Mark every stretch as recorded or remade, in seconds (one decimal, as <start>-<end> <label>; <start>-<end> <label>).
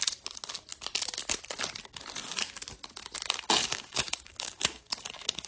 0.0-3.6 recorded; 3.6-4.9 remade; 4.9-5.5 recorded